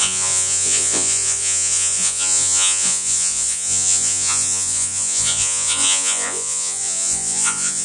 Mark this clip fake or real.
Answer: fake